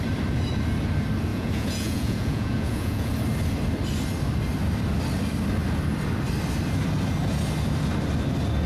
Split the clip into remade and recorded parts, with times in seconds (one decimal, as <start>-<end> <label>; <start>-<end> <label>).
0.0-1.3 recorded; 1.3-3.1 remade; 3.1-8.7 recorded